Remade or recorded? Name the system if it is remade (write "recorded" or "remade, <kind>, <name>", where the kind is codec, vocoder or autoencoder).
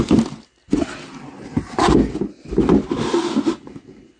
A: recorded